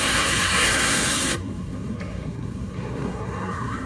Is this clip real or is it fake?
fake